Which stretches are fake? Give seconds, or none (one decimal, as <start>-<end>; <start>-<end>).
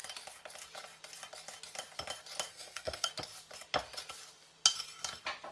2.5-3.1